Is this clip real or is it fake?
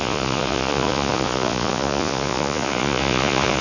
fake